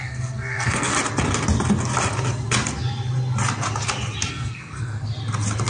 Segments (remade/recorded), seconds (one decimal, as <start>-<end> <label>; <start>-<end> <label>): 0.0-0.9 remade; 0.9-4.3 recorded; 4.3-5.1 remade; 5.1-5.7 recorded